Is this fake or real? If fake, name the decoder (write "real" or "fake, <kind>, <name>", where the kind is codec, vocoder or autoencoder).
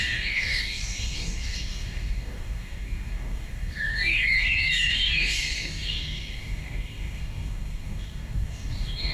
fake, codec, DAC